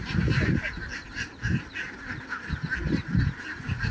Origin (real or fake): real